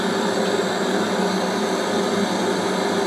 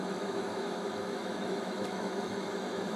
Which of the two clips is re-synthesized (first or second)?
second